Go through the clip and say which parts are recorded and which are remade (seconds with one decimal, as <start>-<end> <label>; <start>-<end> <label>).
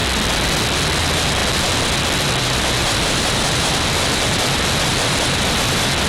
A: 0.0-1.0 recorded; 1.0-1.4 remade; 1.4-2.4 recorded; 2.4-6.1 remade